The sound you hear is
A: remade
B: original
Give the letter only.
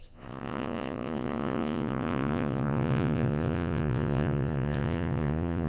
A